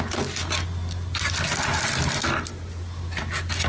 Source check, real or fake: real